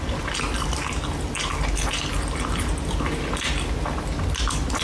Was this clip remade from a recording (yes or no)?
no